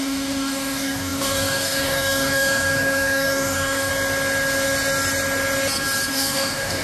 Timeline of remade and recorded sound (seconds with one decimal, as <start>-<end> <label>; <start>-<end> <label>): 0.0-3.9 remade; 3.9-6.1 recorded; 6.1-6.8 remade